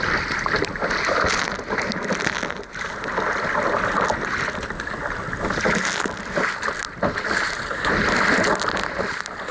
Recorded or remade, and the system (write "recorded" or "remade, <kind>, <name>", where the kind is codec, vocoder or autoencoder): recorded